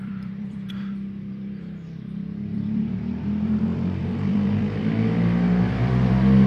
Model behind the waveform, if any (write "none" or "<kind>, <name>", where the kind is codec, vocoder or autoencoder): vocoder, BigVGAN v2